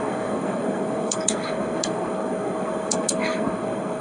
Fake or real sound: fake